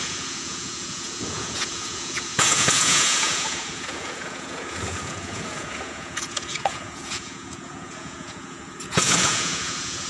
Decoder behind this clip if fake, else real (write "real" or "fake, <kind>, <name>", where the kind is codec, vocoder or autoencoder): fake, vocoder, Vocos